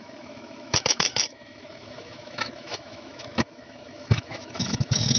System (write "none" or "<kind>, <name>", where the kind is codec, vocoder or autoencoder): autoencoder, DAC-VAE